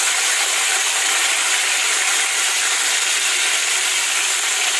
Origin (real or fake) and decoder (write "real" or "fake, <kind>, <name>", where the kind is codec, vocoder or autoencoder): real